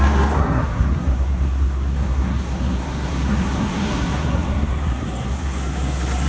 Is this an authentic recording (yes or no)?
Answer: no